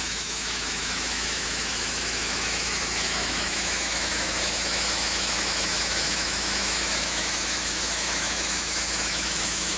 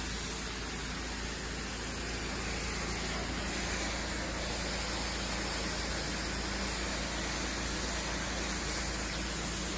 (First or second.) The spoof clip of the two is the first